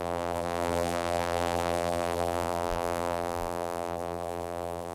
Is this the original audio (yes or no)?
no